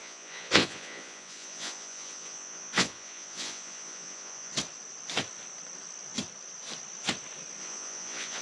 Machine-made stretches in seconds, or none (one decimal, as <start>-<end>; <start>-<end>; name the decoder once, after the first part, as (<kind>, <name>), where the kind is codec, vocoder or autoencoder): 0.0-4.5 (vocoder, Vocos); 7.6-8.4